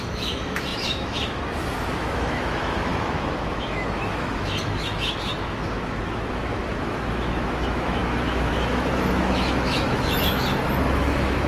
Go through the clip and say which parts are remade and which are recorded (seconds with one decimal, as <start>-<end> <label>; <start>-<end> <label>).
0.0-11.5 remade